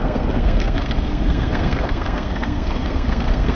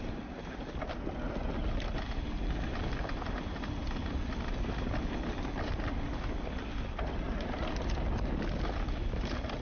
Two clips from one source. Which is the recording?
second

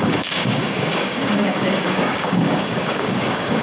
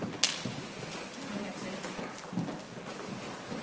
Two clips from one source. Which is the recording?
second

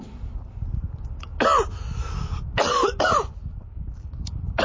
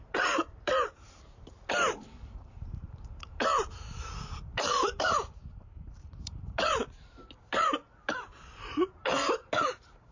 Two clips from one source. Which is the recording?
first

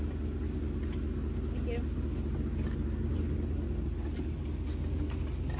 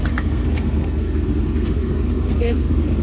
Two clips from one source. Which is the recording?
first